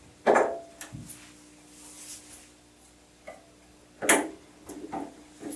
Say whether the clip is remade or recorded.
recorded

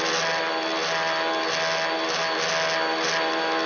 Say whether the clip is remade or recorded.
recorded